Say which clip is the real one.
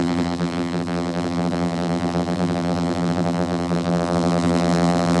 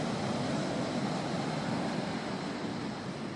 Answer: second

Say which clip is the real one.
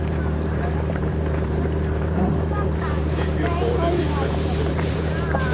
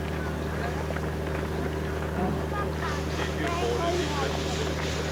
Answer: second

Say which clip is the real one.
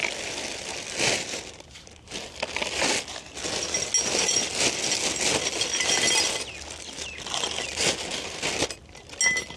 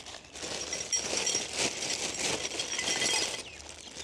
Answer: first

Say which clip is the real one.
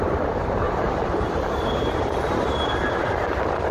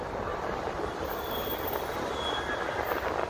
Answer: second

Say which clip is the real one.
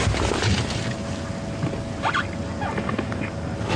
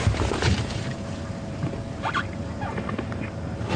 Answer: first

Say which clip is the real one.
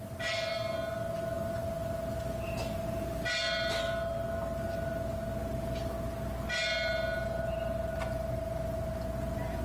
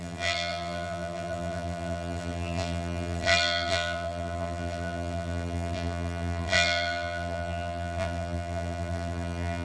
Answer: first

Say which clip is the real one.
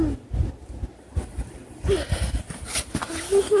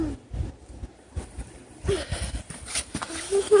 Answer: first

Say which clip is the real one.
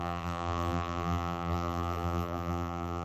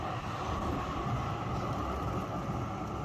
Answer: second